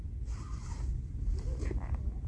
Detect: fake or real real